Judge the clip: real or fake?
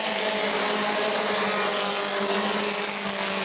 real